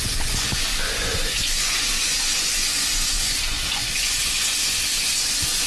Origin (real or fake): fake